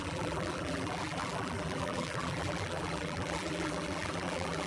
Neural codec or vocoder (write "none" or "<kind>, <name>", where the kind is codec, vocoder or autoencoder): vocoder, BigVGAN v2